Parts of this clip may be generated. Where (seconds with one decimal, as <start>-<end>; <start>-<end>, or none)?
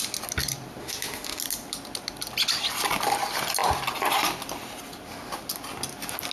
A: 0.8-1.4